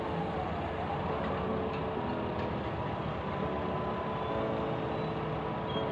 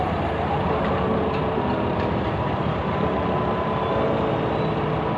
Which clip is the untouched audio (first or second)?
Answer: first